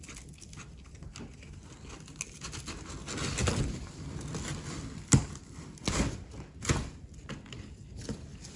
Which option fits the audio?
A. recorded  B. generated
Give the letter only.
A